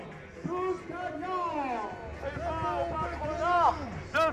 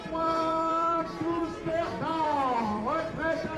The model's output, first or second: second